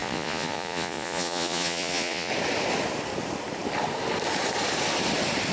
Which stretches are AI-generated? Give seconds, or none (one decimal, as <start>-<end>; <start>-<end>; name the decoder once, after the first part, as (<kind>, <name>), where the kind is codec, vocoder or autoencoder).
0.0-2.3 (vocoder, Vocos)